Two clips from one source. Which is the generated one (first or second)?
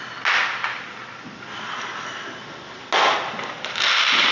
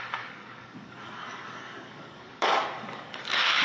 second